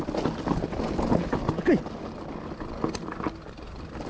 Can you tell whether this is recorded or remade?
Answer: recorded